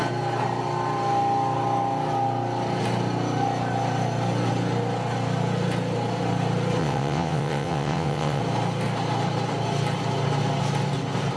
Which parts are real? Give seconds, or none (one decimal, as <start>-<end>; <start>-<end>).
0.0-6.8; 8.4-11.4